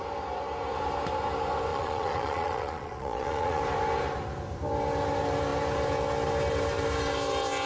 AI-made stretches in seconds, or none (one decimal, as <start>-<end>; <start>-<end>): 1.7-3.6